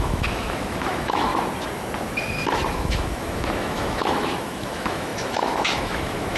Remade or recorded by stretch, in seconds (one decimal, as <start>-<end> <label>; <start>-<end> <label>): 0.0-1.3 remade; 1.3-2.7 recorded; 2.7-6.4 remade